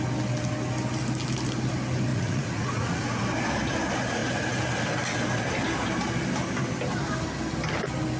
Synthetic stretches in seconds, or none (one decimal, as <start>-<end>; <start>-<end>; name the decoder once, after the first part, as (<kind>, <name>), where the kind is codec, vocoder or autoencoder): 2.1-3.2 (vocoder, Vocos)

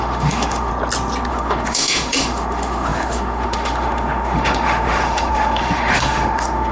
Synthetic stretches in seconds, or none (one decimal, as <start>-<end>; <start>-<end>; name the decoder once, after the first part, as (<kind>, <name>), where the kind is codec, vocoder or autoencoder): 0.0-0.7 (autoencoder, DAC-VAE); 1.3-6.7

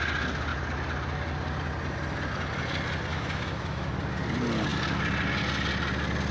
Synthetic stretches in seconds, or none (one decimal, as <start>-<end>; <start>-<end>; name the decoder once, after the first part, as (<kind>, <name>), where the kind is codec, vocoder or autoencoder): 3.1-3.9 (autoencoder, DAC-VAE)

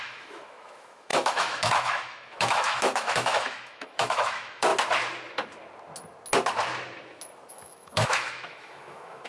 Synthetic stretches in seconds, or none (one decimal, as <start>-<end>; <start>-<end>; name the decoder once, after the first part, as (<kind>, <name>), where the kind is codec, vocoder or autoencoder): 0.0-4.7 (autoencoder, DAC-VAE); 7.5-9.3

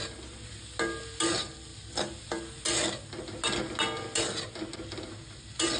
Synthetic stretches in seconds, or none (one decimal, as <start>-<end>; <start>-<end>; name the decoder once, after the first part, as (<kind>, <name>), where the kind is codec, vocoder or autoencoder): none